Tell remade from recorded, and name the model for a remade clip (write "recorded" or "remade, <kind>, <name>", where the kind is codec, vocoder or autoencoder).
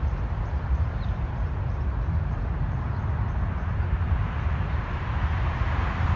remade, vocoder, BigVGAN v2